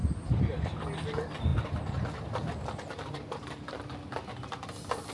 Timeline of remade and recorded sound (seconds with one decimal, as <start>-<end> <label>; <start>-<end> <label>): 0.0-5.1 recorded